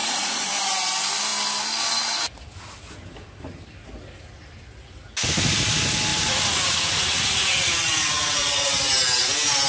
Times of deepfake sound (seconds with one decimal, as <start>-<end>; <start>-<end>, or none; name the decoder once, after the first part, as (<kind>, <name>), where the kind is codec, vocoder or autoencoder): 0.0-0.5 (vocoder, Vocos); 6.1-8.9